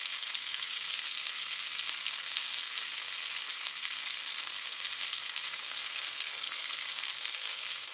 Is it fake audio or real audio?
fake